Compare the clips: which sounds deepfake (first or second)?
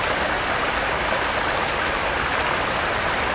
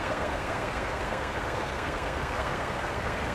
second